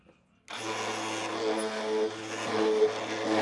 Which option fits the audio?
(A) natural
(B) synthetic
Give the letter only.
A